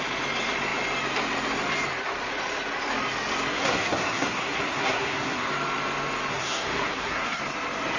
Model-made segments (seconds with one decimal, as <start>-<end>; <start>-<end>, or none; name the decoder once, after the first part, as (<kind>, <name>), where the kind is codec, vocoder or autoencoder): 3.5-5.5 (codec, SNAC); 6.3-7.4